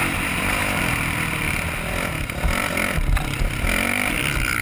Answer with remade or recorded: remade